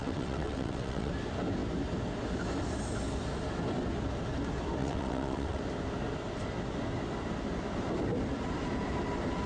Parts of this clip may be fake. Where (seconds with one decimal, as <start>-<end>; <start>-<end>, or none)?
0.0-1.1; 4.8-5.6